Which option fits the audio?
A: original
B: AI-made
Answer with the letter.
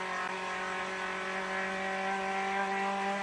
A